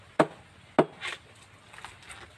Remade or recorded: recorded